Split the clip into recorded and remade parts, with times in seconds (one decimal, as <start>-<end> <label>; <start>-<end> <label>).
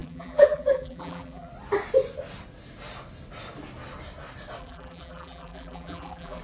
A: 0.0-1.5 remade; 1.5-4.6 recorded; 4.6-6.4 remade